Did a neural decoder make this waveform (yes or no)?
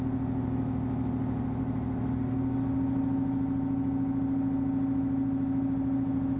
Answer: no